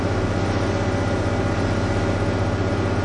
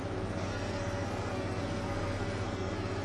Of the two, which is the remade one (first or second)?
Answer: second